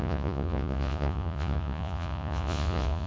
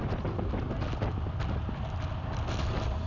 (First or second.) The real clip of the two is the second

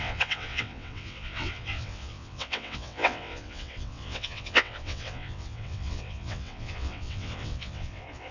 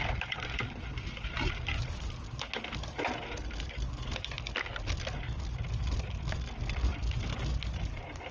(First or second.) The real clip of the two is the second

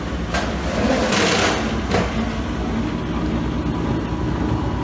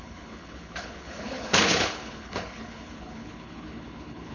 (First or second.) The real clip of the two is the first